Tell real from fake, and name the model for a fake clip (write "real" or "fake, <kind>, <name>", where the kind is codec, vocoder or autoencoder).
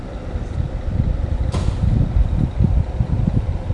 real